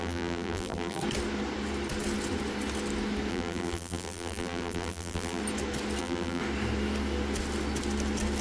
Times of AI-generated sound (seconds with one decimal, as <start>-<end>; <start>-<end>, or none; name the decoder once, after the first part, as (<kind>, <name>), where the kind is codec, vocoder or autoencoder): 0.0-1.0 (vocoder, BigVGAN v2); 3.3-5.4; 6.0-6.4